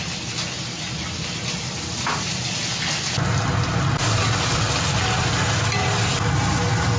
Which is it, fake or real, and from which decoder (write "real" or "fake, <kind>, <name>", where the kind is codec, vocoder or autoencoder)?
real